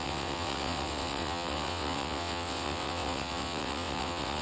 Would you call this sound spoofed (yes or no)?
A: yes